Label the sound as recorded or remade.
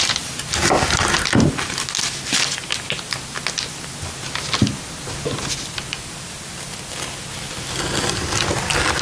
recorded